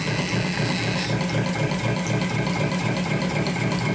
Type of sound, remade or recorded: recorded